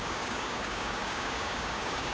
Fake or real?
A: fake